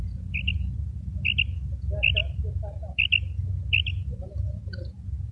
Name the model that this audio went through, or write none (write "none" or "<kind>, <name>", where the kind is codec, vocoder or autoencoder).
none